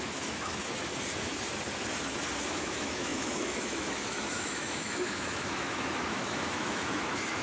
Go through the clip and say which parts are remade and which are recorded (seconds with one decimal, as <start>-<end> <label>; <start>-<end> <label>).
0.0-0.9 remade; 0.9-2.5 recorded; 2.5-7.4 remade